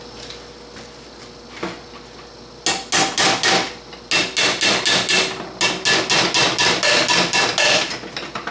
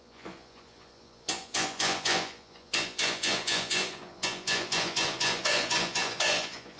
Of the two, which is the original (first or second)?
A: first